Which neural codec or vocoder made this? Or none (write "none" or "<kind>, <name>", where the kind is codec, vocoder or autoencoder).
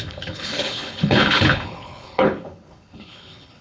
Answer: codec, HILCodec